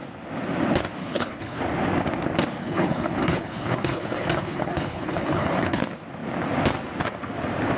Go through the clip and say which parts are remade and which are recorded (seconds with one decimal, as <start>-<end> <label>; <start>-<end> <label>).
0.0-1.0 recorded; 1.0-1.6 remade; 1.6-2.6 recorded; 2.6-5.8 remade; 5.8-7.8 recorded